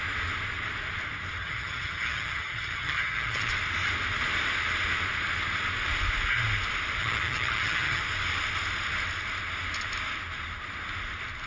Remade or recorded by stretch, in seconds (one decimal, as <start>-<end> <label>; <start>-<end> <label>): 0.0-1.4 recorded; 1.4-3.5 remade; 3.5-7.0 recorded; 7.0-8.0 remade; 8.0-11.5 recorded